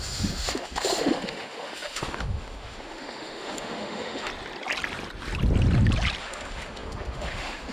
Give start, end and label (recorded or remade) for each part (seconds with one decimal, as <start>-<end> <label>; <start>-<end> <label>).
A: 0.0-4.3 remade; 4.3-6.2 recorded; 6.2-7.7 remade